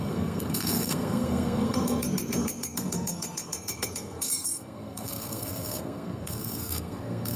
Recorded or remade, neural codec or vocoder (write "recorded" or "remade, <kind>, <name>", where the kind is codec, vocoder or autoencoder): remade, codec, SNAC